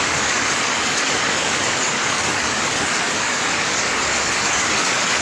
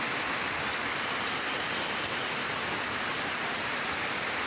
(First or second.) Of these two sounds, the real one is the second